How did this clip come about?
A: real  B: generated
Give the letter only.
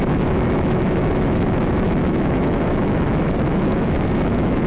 B